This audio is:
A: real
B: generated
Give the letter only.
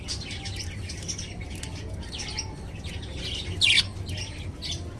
A